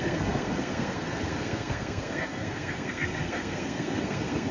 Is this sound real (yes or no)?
no